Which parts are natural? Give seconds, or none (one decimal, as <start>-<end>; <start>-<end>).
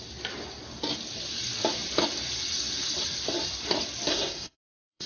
0.0-4.1